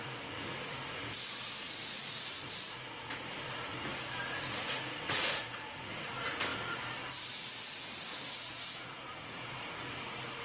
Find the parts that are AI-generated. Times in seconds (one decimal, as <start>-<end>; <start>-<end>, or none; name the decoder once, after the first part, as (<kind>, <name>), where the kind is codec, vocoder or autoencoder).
0.0-10.4 (vocoder, Vocos)